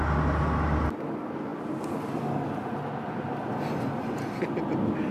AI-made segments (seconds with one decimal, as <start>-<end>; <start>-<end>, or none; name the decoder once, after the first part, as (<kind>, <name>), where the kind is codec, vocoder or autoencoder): none